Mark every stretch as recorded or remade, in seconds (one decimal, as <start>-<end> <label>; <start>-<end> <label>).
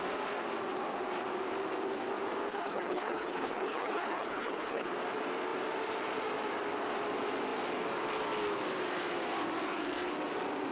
0.0-2.5 recorded; 2.5-4.9 remade; 4.9-10.7 recorded